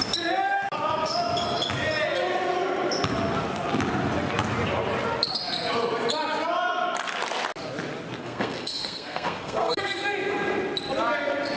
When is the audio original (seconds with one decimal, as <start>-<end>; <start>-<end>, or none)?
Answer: 0.0-8.2; 10.0-11.6